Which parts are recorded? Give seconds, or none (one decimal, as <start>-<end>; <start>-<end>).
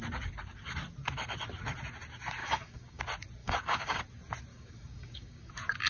0.0-2.4; 3.0-3.4; 4.0-4.5; 5.5-5.9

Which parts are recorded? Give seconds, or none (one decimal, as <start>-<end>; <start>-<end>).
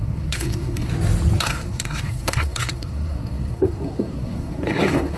0.9-1.4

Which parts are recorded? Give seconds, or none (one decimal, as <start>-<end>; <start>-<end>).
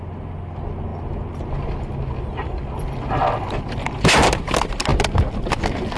0.0-6.0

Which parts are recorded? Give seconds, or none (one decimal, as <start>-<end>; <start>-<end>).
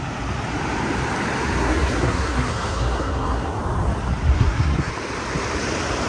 0.0-1.6; 3.6-4.3; 4.9-6.1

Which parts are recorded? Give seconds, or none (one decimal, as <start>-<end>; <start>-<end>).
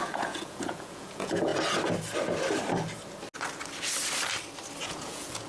1.5-4.8